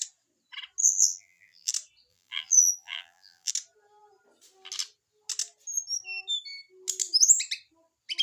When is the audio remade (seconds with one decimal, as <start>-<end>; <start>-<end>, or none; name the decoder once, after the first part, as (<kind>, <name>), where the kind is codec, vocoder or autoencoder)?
0.8-1.7 (vocoder, BigVGAN v2); 2.1-3.5

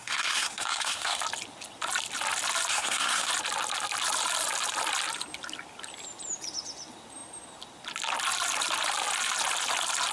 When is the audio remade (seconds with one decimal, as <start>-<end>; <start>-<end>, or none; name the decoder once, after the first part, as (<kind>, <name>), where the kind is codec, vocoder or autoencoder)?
0.0-1.2 (codec, SNAC); 2.7-3.3